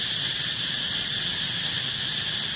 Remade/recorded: recorded